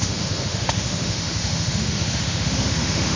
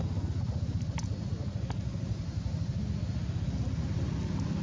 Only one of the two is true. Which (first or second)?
second